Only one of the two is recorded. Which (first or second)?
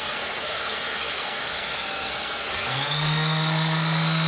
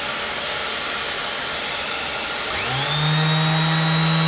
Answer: second